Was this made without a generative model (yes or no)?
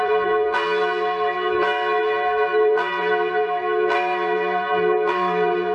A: no